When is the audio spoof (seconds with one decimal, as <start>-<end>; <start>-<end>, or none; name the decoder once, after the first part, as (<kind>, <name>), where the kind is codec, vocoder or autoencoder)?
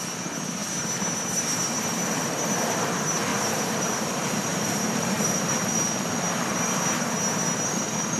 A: 3.3-5.8 (vocoder, BigVGAN v2)